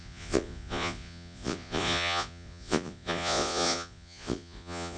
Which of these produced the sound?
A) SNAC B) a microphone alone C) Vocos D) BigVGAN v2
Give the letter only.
C